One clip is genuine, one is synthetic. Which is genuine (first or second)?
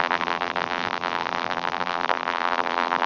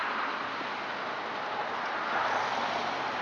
second